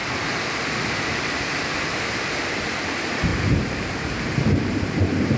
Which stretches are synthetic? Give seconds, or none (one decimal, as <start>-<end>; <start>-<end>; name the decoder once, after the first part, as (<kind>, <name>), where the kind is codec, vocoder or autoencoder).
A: 0.0-5.4 (vocoder, BigVGAN v2)